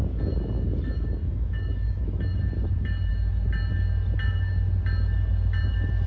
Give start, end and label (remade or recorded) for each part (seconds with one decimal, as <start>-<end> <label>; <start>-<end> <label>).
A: 0.0-1.2 recorded; 1.2-2.4 remade; 2.4-6.1 recorded